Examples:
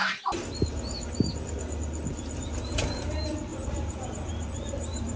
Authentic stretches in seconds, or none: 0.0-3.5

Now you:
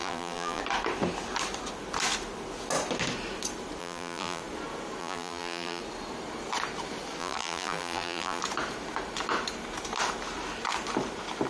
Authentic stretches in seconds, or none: 0.6-3.8; 4.4-5.0; 5.8-7.2; 8.4-11.5

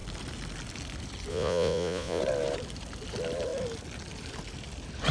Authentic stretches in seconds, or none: 0.0-1.3; 2.2-5.1

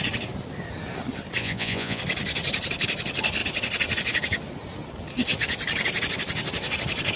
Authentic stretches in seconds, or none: 0.0-1.4; 2.0-7.2

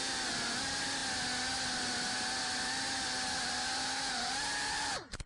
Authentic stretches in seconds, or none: 1.0-2.7

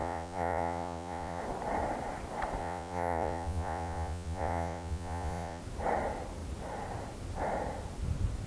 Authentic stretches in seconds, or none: 1.4-2.6; 5.6-8.5

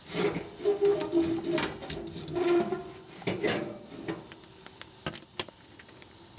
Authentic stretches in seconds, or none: 0.0-6.4

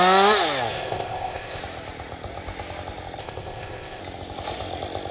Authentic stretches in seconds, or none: 0.0-0.7; 1.6-3.2; 4.0-5.1